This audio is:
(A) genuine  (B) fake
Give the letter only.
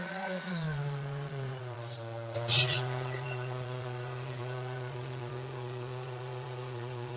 B